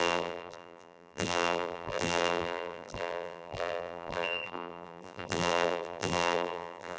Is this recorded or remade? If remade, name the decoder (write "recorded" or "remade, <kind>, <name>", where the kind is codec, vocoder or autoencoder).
remade, vocoder, BigVGAN v2